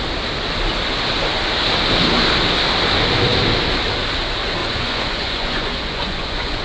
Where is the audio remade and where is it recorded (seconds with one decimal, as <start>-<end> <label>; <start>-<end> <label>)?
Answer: 0.0-4.6 recorded; 4.6-6.6 remade